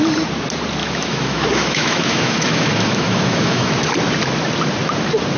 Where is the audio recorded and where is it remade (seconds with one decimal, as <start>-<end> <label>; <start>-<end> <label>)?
0.0-0.8 recorded; 0.8-3.9 remade; 3.9-5.4 recorded